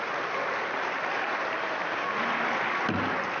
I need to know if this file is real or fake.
real